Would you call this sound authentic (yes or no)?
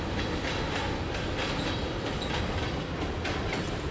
yes